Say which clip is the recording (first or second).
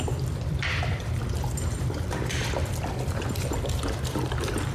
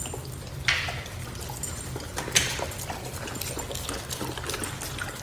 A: second